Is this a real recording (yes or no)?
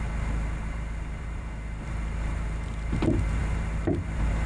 no